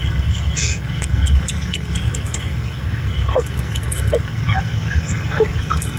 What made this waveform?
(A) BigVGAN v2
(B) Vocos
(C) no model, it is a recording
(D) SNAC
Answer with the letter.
D